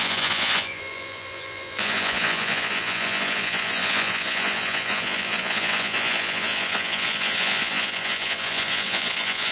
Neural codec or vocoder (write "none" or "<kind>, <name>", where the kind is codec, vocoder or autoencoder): vocoder, Vocos